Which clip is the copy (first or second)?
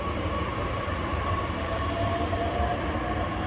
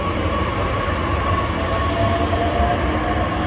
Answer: first